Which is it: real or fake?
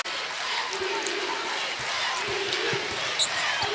real